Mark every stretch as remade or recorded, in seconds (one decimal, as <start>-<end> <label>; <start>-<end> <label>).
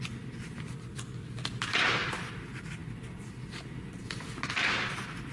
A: 0.0-1.7 recorded; 1.7-2.3 remade; 2.3-5.3 recorded